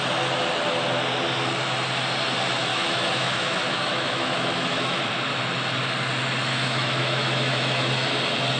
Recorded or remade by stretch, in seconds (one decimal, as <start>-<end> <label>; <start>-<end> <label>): 0.0-2.7 recorded; 2.7-5.1 remade; 5.1-6.5 recorded; 6.5-7.9 remade; 7.9-8.6 recorded